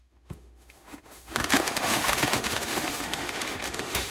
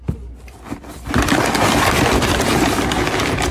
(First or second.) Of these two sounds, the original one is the second